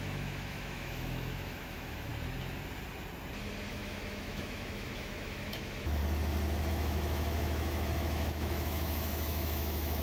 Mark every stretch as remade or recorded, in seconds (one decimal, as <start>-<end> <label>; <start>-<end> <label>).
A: 0.0-2.1 remade; 2.1-3.7 recorded; 3.7-6.0 remade; 6.0-6.7 recorded; 6.7-10.0 remade

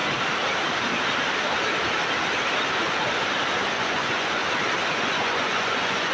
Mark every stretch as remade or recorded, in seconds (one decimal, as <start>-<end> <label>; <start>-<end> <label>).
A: 0.0-3.7 recorded; 3.7-4.4 remade; 4.4-4.9 recorded; 4.9-6.1 remade

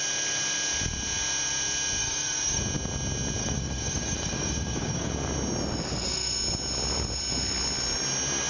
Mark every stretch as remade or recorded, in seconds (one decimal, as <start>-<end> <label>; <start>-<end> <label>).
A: 0.0-2.0 recorded; 2.0-2.6 remade; 2.6-3.4 recorded; 3.4-5.1 remade; 5.1-8.5 recorded

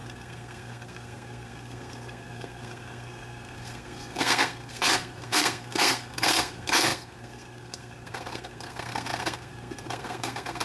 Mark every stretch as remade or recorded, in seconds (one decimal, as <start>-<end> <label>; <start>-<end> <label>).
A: 0.0-10.6 remade

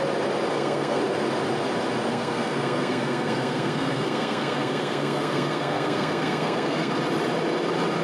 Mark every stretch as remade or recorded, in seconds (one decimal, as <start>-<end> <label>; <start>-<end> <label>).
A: 0.0-0.5 recorded; 0.5-1.0 remade; 1.0-2.1 recorded; 2.1-6.9 remade; 6.9-8.0 recorded

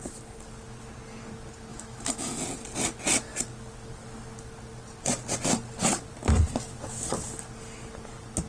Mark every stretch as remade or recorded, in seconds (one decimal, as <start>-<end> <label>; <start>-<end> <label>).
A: 0.0-1.7 recorded; 1.7-2.4 remade; 2.4-8.5 recorded

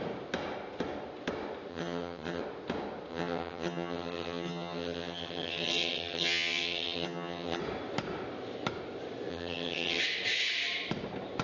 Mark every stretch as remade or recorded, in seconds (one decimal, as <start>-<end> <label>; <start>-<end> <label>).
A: 0.0-1.7 recorded; 1.7-2.4 remade; 2.4-3.1 recorded; 3.1-7.6 remade; 7.6-9.3 recorded; 9.3-10.0 remade; 10.0-11.4 recorded

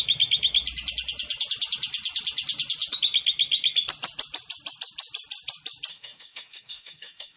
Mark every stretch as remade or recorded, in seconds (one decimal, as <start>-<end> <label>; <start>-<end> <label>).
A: 0.0-5.9 recorded; 5.9-7.4 remade